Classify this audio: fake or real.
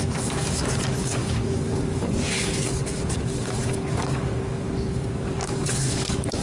fake